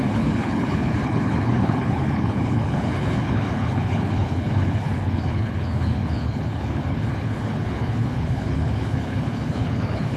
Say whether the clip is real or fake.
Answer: fake